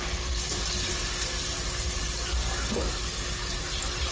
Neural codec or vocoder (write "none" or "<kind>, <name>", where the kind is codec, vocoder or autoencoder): none